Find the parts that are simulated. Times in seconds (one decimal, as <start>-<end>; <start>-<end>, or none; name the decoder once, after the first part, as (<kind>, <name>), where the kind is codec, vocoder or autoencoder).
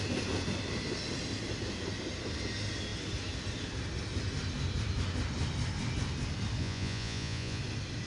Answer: 6.6-7.6 (vocoder, Vocos)